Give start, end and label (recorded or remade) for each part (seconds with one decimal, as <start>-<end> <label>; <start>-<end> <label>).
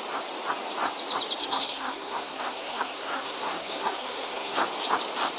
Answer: 0.0-1.4 recorded; 1.4-4.6 remade; 4.6-5.4 recorded